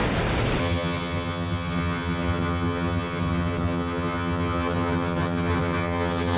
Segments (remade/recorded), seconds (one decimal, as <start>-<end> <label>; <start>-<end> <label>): 0.0-0.6 recorded; 0.6-6.4 remade